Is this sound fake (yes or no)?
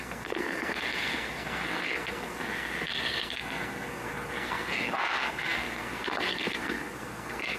yes